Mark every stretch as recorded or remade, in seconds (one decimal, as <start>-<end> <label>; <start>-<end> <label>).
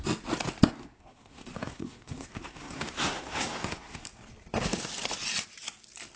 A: 0.0-0.8 recorded; 0.8-4.0 remade; 4.0-6.2 recorded